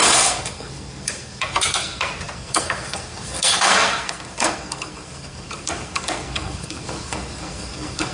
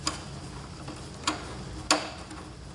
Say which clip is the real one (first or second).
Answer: second